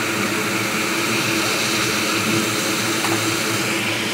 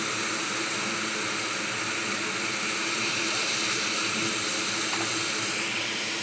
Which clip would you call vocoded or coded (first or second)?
second